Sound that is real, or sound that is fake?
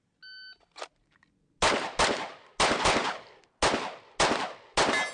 real